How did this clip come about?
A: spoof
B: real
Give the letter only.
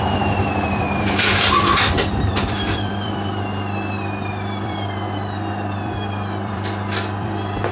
A